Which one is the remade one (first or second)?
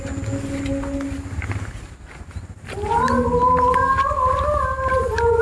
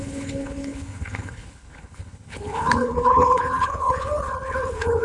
second